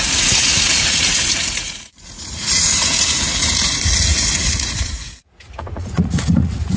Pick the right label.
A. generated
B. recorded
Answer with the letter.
A